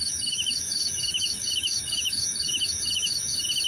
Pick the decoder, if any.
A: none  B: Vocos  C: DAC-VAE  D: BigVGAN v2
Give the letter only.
C